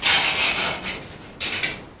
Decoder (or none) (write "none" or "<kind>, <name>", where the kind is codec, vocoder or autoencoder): none